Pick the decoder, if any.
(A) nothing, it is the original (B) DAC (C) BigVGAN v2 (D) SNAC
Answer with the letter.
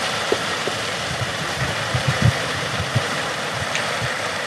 C